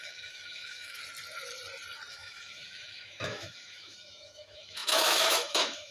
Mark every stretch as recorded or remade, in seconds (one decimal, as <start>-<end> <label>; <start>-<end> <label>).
0.0-1.0 remade; 1.0-2.1 recorded; 2.1-5.9 remade